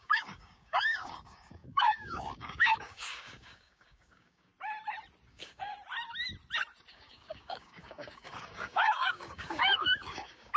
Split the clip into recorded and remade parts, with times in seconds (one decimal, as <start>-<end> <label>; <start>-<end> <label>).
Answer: 0.0-4.5 remade; 4.5-5.3 recorded; 5.3-5.7 remade; 5.7-6.9 recorded; 6.9-10.6 remade